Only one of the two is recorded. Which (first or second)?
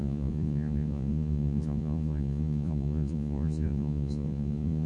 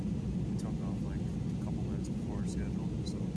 second